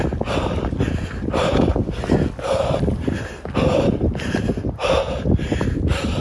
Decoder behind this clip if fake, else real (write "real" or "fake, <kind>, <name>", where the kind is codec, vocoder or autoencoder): real